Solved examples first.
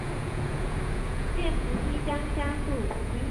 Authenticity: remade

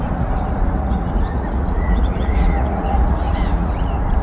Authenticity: remade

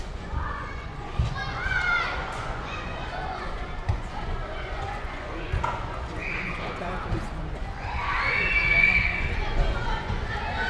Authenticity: remade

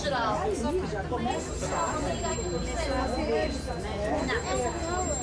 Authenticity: recorded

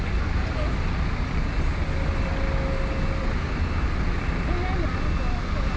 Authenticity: recorded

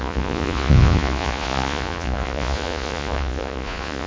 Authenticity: remade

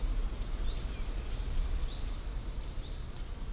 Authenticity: recorded